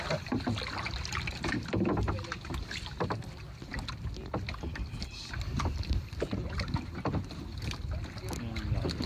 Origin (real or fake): real